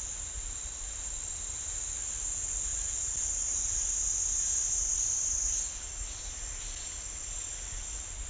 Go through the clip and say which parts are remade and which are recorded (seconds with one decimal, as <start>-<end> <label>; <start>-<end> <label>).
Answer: 0.0-8.3 recorded